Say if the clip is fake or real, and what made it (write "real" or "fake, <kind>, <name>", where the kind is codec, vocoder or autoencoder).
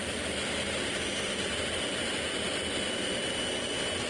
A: real